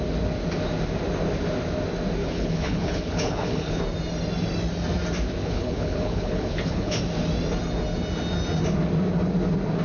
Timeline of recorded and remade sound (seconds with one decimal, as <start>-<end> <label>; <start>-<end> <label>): 0.0-2.2 recorded; 2.2-3.8 remade; 3.8-5.4 recorded; 5.4-7.0 remade; 7.0-9.8 recorded